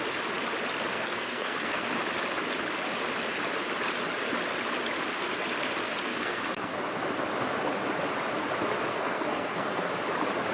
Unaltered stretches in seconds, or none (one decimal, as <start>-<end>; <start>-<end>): 0.0-0.9; 1.9-6.0; 6.8-8.9; 9.9-10.5